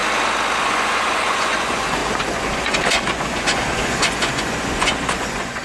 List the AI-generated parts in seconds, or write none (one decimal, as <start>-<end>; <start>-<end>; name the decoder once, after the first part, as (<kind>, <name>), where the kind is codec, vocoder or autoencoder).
0.6-5.6 (vocoder, Vocos)